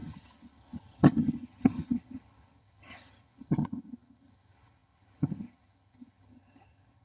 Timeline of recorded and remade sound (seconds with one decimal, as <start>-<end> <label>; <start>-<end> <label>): 0.0-7.0 remade